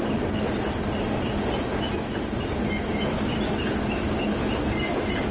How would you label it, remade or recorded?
recorded